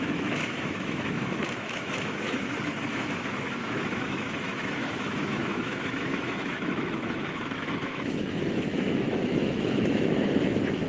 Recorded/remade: remade